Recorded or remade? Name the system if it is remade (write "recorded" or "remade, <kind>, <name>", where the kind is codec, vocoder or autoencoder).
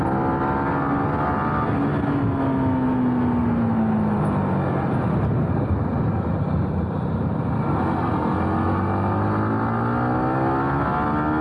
recorded